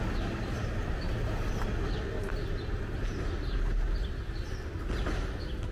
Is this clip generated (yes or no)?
no